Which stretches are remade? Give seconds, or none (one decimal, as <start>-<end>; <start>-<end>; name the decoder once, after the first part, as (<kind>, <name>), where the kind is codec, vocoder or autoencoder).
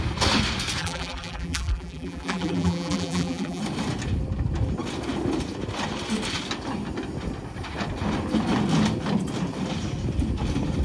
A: 0.8-3.6 (vocoder, BigVGAN v2)